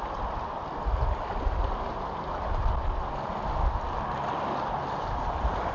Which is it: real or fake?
real